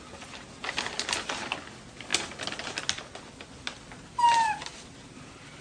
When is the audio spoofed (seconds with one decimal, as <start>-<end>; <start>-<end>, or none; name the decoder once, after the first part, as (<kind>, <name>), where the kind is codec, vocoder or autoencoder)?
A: none